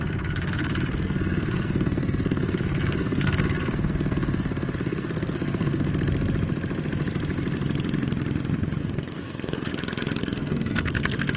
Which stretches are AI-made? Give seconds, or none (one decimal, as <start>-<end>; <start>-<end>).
0.0-5.9; 8.8-9.7; 10.2-11.4